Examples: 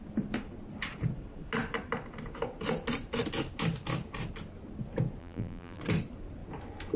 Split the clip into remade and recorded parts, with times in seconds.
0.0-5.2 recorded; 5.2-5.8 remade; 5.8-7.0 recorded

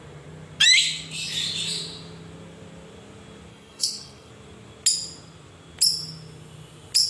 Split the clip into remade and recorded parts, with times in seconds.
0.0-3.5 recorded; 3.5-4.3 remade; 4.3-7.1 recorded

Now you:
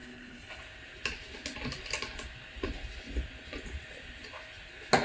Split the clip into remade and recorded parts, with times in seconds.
0.0-0.6 remade; 0.6-5.0 recorded

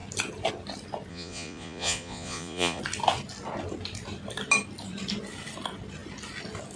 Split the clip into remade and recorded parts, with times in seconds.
0.0-1.1 recorded; 1.1-2.8 remade; 2.8-6.8 recorded

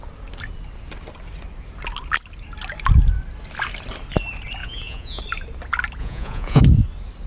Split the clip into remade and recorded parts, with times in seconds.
0.0-4.6 recorded; 4.6-5.2 remade; 5.2-6.0 recorded; 6.0-6.6 remade; 6.6-7.3 recorded

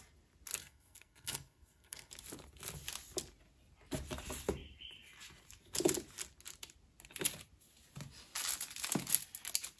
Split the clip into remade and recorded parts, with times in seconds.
0.0-0.6 recorded; 0.6-2.1 remade; 2.1-9.8 recorded

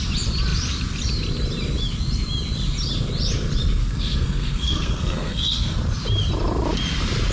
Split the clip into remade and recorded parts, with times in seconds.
0.0-3.8 recorded; 3.8-5.8 remade; 5.8-7.3 recorded